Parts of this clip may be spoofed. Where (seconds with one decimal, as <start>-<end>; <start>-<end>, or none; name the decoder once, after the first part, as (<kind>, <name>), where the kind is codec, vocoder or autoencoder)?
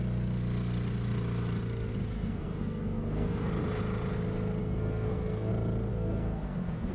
2.0-3.5 (codec, SNAC); 4.6-5.5; 5.9-6.9